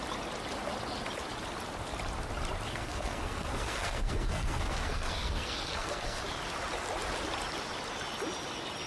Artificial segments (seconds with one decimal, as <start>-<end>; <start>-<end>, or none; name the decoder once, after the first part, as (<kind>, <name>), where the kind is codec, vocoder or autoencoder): 2.7-6.2 (codec, SNAC)